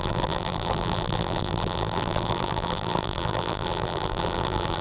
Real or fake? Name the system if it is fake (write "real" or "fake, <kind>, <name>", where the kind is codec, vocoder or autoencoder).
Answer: fake, vocoder, BigVGAN v2